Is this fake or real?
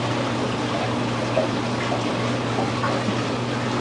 real